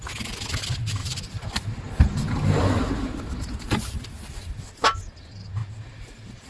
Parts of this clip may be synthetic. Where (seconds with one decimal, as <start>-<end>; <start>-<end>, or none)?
1.0-4.5